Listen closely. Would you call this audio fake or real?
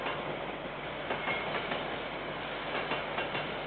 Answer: real